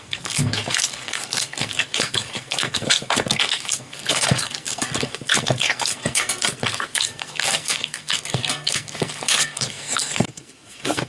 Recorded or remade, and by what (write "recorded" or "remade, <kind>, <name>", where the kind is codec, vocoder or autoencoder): remade, codec, SNAC